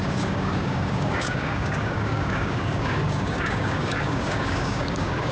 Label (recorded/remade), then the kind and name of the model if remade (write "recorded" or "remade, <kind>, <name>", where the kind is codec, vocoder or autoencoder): remade, codec, DAC